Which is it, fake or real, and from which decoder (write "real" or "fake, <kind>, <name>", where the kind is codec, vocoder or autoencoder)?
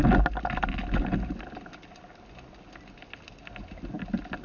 real